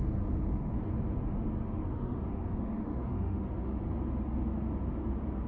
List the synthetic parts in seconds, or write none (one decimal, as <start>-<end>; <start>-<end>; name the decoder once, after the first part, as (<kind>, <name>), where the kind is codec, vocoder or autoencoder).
1.6-3.8 (autoencoder, DAC-VAE)